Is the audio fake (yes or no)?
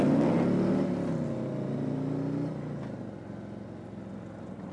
no